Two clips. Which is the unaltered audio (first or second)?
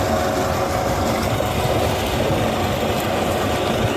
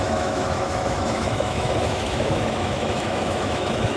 first